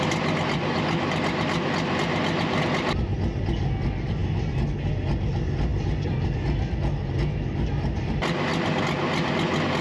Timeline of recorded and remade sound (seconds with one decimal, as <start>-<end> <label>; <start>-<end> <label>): 0.0-9.8 recorded